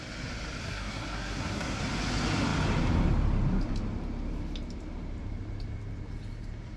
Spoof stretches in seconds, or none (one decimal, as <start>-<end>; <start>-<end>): 0.6-1.8